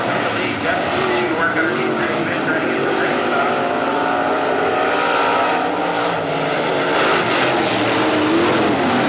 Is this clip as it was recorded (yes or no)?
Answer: yes